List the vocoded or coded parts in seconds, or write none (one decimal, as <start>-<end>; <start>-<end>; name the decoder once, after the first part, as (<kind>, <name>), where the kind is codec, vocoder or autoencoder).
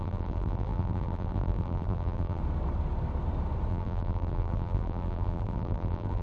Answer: 0.0-2.4 (vocoder, BigVGAN v2); 3.7-6.2